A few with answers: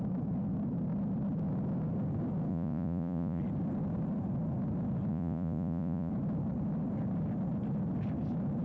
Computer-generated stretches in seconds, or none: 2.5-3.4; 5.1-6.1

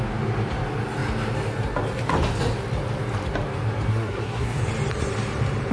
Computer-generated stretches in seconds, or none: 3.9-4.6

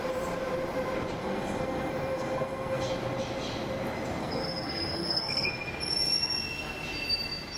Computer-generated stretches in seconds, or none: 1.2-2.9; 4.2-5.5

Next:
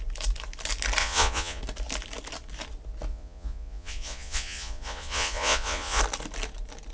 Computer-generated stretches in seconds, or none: 1.0-1.6; 3.1-6.0

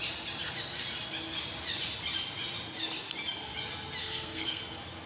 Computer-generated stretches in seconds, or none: 4.0-4.6

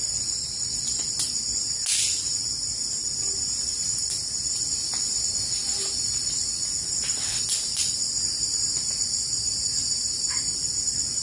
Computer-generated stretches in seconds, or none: none

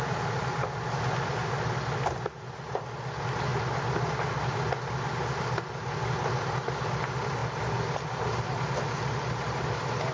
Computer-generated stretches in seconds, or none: none